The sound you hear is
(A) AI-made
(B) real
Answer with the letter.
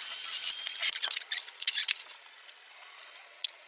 A